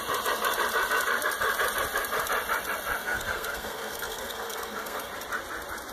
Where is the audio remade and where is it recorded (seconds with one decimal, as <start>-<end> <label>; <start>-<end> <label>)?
0.0-3.0 recorded; 3.0-5.1 remade; 5.1-5.9 recorded